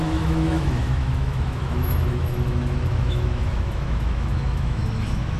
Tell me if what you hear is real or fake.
fake